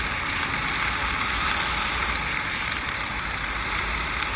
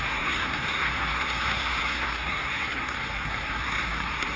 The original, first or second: first